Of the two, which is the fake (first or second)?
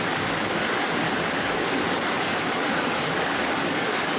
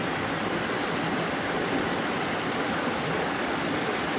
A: first